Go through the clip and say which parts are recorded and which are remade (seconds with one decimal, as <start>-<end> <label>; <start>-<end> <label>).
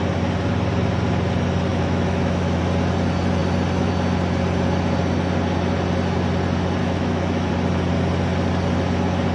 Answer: 0.0-1.7 recorded; 1.7-2.6 remade; 2.6-6.8 recorded; 6.8-7.5 remade; 7.5-9.3 recorded